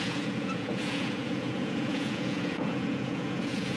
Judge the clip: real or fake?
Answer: fake